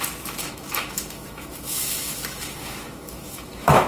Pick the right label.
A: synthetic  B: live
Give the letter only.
A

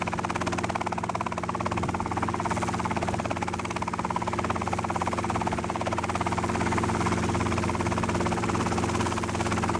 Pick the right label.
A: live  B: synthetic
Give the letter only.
A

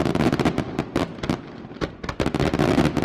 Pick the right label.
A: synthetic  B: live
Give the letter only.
B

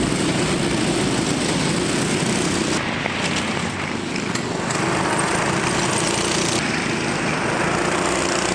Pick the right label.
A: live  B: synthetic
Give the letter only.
A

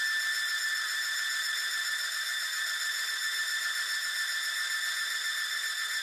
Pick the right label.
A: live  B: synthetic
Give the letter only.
A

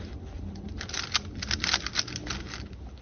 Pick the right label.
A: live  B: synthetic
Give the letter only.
A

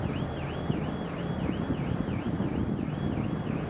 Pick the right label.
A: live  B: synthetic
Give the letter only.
A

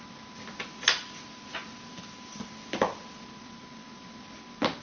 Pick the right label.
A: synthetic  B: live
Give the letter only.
B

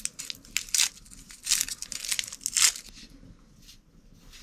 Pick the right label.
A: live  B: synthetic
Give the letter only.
A